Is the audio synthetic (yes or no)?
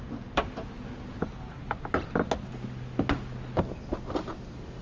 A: no